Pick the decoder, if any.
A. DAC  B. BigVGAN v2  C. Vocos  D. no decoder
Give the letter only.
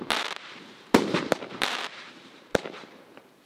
B